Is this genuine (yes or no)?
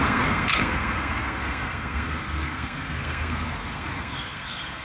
no